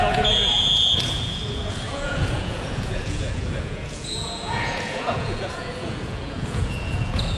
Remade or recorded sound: remade